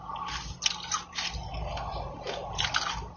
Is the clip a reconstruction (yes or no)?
no